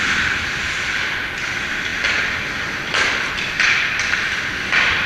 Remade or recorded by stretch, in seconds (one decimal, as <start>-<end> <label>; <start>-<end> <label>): 0.0-5.1 recorded